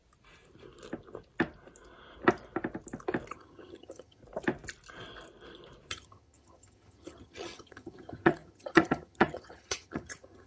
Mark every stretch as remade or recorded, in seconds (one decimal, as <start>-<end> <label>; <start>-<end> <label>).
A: 0.0-3.3 recorded; 3.3-4.2 remade; 4.2-5.9 recorded; 5.9-10.5 remade